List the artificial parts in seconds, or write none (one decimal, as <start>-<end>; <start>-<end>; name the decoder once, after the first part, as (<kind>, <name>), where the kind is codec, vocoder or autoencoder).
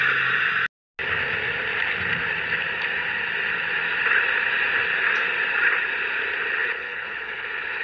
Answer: 6.6-7.8 (codec, HILCodec)